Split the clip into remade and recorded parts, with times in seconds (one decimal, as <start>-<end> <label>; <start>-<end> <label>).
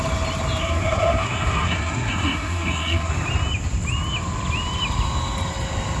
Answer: 0.0-0.6 recorded; 0.6-3.1 remade; 3.1-6.0 recorded